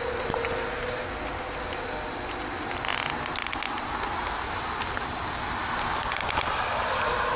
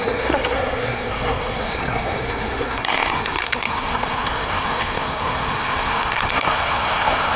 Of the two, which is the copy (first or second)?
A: second